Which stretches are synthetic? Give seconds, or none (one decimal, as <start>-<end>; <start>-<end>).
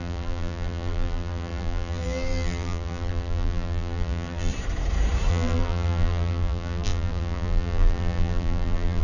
0.0-4.5; 5.3-9.0